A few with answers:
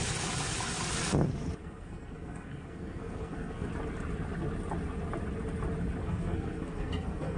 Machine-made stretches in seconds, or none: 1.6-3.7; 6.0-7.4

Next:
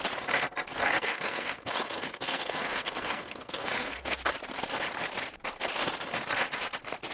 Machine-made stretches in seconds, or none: 0.8-4.0

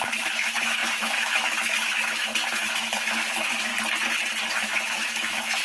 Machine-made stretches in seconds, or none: 0.0-3.7; 4.5-5.6